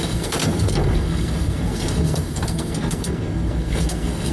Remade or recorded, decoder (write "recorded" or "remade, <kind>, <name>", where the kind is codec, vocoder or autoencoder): remade, codec, SNAC